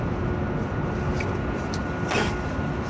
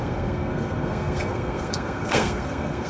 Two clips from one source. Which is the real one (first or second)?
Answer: first